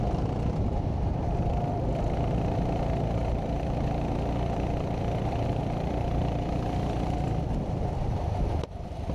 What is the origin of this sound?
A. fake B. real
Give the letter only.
A